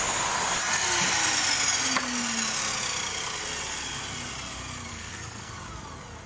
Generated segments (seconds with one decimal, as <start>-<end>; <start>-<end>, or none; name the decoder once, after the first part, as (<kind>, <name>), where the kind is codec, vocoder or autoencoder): 4.9-5.5 (codec, SNAC)